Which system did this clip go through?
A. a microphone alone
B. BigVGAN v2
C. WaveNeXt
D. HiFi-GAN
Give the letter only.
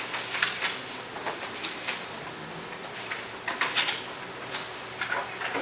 A